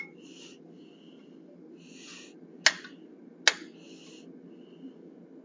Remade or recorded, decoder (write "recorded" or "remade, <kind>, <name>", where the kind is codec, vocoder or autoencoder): recorded